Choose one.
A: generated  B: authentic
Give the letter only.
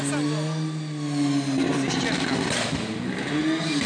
B